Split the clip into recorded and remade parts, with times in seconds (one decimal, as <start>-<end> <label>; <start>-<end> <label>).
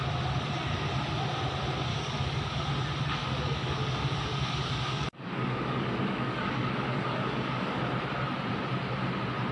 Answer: 0.0-1.9 recorded; 1.9-2.7 remade; 2.7-3.2 recorded; 3.2-7.8 remade; 7.8-9.5 recorded